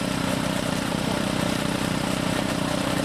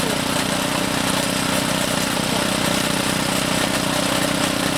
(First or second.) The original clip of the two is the second